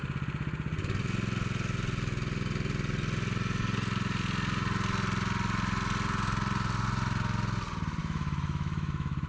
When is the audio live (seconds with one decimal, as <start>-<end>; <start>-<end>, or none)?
0.0-8.0